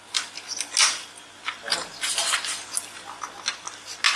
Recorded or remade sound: recorded